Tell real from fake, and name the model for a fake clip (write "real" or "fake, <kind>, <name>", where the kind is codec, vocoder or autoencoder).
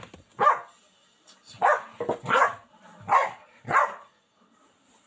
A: real